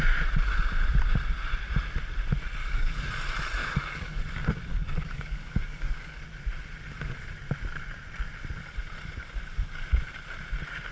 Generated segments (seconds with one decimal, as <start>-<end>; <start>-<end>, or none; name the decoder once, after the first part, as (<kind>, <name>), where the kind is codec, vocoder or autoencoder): 2.6-3.1 (codec, DAC); 3.6-4.2; 4.7-6.2